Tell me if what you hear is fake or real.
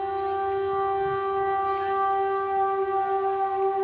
real